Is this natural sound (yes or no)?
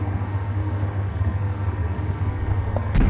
no